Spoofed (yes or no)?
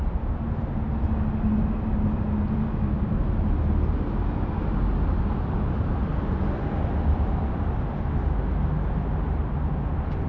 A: no